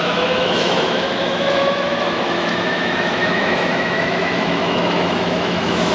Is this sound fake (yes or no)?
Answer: yes